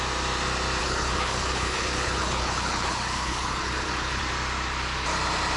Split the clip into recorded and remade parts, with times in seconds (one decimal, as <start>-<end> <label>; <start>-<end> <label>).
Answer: 0.0-0.8 recorded; 0.8-4.2 remade; 4.2-5.6 recorded